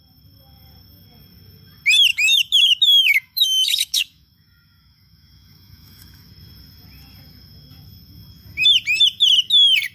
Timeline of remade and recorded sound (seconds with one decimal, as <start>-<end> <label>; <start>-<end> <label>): 0.0-2.1 recorded; 2.1-6.3 remade; 6.3-9.9 recorded